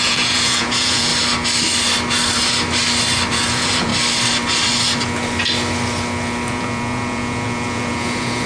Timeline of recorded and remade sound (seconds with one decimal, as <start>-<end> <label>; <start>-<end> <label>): 0.0-1.1 remade; 1.1-3.3 recorded; 3.3-3.9 remade; 3.9-6.5 recorded; 6.5-8.5 remade